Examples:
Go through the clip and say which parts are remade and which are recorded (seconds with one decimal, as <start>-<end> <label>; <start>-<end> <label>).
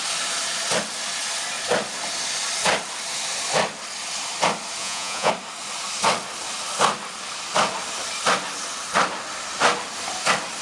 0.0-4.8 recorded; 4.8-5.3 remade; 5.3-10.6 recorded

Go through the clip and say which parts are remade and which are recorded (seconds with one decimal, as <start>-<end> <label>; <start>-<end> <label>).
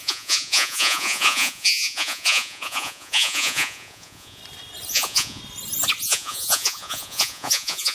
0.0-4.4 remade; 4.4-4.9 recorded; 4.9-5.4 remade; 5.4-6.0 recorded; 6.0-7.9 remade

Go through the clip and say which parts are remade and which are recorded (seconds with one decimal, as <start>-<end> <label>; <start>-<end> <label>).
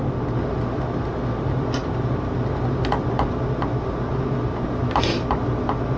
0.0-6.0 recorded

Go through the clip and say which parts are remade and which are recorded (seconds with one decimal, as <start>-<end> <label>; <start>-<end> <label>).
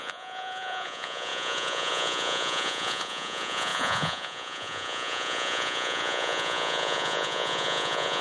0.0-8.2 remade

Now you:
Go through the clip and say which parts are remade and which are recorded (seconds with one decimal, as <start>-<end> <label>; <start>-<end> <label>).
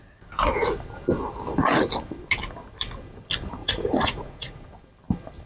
0.0-3.6 recorded; 3.6-4.6 remade; 4.6-5.5 recorded